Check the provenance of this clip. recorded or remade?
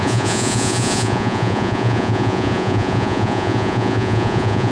remade